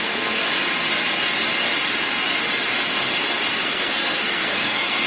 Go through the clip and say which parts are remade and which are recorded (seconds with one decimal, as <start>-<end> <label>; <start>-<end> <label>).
0.0-0.4 remade; 0.4-3.5 recorded; 3.5-5.1 remade